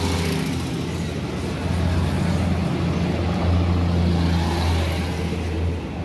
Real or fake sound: real